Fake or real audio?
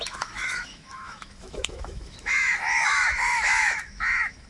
fake